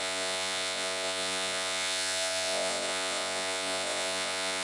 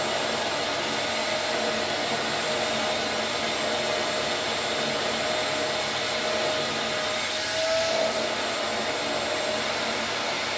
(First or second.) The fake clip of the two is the first